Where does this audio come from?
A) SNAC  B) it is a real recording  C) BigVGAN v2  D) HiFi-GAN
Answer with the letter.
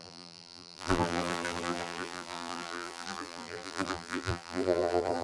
C